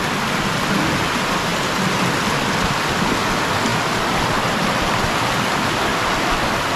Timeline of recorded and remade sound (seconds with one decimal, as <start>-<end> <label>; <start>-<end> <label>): 0.0-6.8 recorded